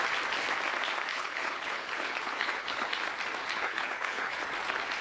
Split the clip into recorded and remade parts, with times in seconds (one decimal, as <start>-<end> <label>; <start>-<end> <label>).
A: 0.0-1.1 recorded; 1.1-2.9 remade; 2.9-3.4 recorded; 3.4-4.4 remade; 4.4-5.0 recorded